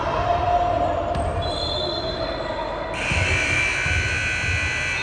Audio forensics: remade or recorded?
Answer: remade